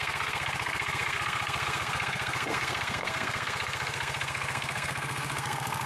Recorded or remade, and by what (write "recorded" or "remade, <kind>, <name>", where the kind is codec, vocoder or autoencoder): remade, codec, SNAC